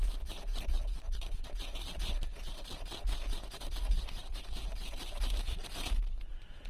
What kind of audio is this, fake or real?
fake